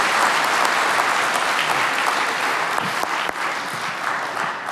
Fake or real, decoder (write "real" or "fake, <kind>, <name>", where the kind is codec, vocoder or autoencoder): fake, vocoder, BigVGAN v2